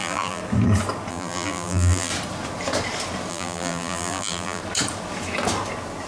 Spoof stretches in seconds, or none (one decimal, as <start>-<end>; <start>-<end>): 0.0-0.4; 1.1-2.1; 3.3-4.6